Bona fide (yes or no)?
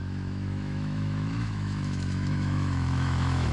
no